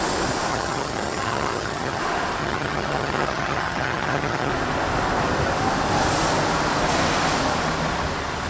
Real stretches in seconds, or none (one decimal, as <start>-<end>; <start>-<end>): 0.0-0.5; 2.0-2.4; 4.5-8.5